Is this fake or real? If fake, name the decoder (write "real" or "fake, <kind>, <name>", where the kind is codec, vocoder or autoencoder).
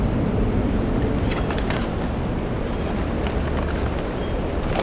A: real